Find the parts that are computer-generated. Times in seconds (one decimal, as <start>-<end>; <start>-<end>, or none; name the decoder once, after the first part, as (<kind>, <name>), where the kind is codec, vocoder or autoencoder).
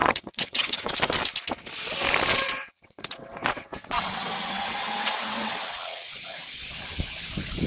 0.0-0.9 (vocoder, WaveNeXt); 2.3-6.9